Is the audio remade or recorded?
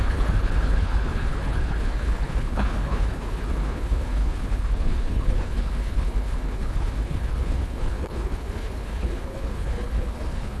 remade